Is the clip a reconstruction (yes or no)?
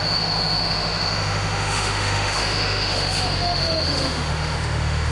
yes